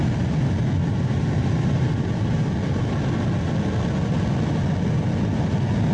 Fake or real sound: real